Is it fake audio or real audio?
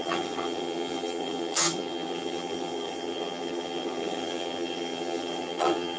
fake